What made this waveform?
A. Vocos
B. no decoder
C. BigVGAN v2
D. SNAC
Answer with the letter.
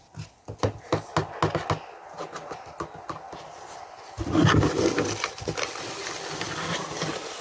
B